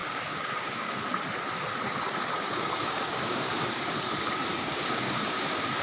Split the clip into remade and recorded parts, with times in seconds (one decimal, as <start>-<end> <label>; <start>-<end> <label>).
0.0-1.0 remade; 1.0-2.5 recorded; 2.5-3.5 remade; 3.5-4.5 recorded; 4.5-5.3 remade; 5.3-5.8 recorded